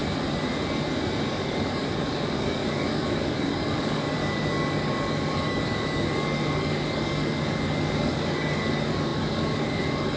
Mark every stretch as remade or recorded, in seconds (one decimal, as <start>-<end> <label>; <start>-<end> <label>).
0.0-1.3 recorded; 1.3-10.2 remade